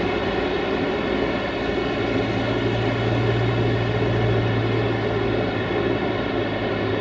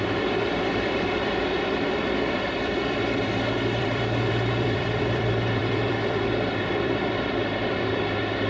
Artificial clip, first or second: second